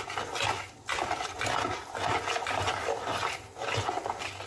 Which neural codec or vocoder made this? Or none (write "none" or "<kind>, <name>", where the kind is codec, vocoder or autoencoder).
none